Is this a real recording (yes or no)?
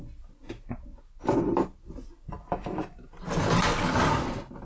yes